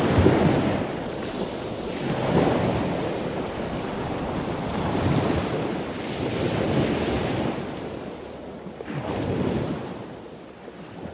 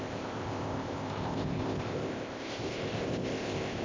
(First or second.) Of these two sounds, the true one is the first